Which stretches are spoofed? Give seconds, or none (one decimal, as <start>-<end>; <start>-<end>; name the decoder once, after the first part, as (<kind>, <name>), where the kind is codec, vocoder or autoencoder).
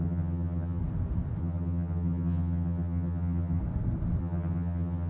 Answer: 0.0-0.8 (vocoder, HiFi-GAN); 1.4-3.6; 4.2-5.1